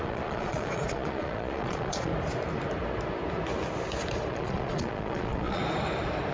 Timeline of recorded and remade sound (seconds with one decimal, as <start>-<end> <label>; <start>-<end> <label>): 0.0-2.1 remade; 2.1-4.3 recorded; 4.3-5.6 remade; 5.6-6.3 recorded